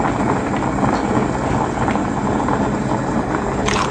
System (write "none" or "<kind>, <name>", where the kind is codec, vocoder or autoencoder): none